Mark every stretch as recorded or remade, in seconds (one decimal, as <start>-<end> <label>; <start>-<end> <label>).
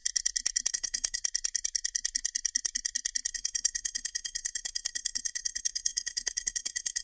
0.0-0.7 recorded; 0.7-1.2 remade; 1.2-3.3 recorded; 3.3-7.0 remade